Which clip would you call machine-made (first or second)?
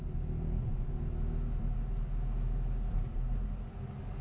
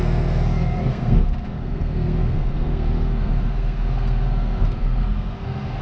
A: second